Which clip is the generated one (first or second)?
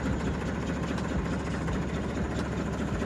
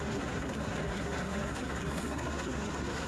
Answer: second